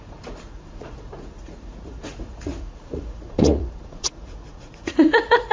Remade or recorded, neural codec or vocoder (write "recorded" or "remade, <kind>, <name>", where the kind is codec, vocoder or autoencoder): remade, vocoder, Vocos